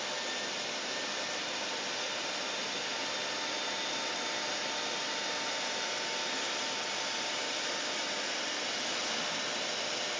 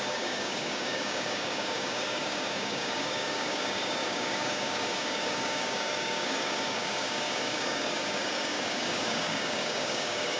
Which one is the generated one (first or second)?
second